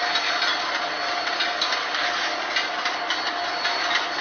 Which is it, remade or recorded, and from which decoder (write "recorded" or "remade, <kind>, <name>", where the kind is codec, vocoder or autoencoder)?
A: recorded